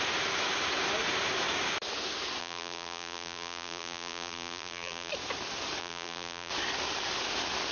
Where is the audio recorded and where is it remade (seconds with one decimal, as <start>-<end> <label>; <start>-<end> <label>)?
0.0-2.4 recorded; 2.4-5.1 remade; 5.1-5.8 recorded; 5.8-6.5 remade; 6.5-7.7 recorded